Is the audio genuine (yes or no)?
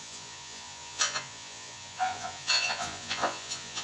no